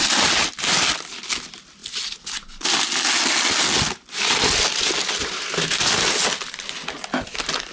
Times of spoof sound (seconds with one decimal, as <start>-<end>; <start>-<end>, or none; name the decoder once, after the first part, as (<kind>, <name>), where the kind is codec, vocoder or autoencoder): none